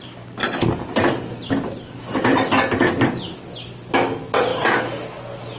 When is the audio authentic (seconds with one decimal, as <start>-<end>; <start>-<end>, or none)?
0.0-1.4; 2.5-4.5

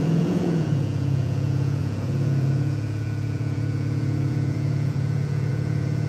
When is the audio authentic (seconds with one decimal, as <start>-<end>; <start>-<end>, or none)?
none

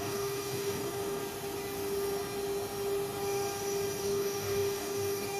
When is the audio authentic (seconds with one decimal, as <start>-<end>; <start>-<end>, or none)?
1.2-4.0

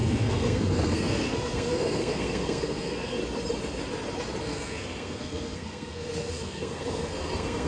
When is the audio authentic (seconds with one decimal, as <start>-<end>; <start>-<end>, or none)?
3.2-4.4

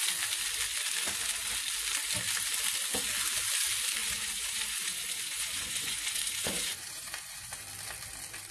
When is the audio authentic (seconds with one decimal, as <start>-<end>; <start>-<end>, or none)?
0.0-4.0; 7.6-8.5

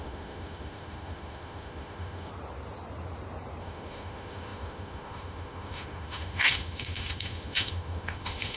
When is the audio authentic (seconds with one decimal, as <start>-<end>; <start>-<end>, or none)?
2.3-3.6

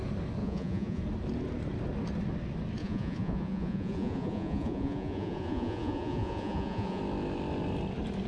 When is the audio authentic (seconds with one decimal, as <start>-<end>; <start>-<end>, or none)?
0.0-0.4; 1.0-2.8; 7.0-8.3

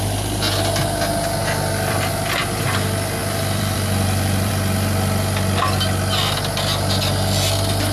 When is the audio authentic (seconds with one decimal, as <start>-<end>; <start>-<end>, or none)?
0.0-1.4; 2.1-3.2; 4.5-7.9